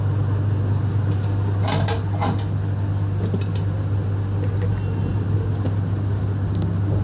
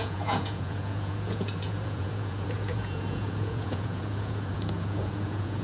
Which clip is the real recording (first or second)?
first